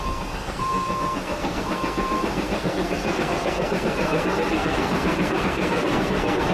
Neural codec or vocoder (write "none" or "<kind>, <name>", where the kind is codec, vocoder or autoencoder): codec, SNAC